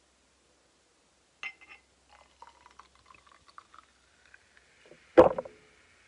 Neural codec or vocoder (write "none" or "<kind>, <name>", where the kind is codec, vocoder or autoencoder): none